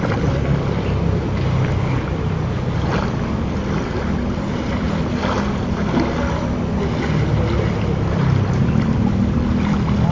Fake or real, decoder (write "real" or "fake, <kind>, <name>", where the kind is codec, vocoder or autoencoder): real